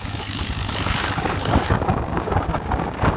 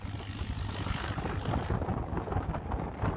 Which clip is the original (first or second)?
second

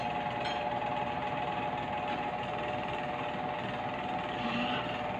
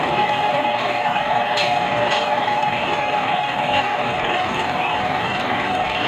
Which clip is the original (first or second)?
first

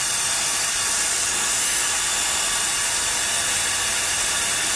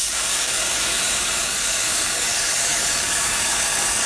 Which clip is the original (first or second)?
first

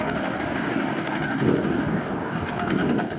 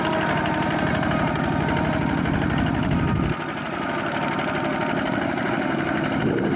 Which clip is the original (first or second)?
second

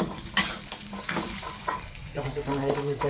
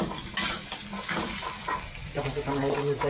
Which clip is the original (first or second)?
second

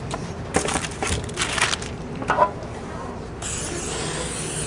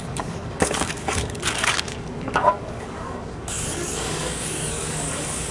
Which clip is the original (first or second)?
first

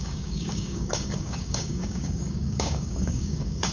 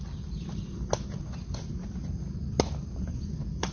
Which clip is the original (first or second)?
second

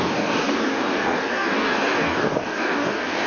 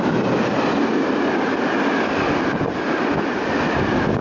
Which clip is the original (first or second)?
second